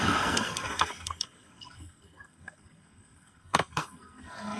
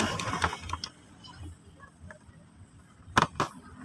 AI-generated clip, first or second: first